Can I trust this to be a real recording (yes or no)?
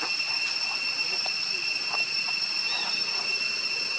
yes